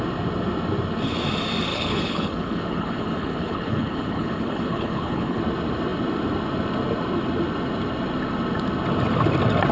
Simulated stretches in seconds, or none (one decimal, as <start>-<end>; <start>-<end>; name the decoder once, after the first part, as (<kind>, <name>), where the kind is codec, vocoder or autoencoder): 1.7-5.4 (codec, HILCodec)